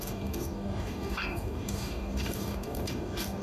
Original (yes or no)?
no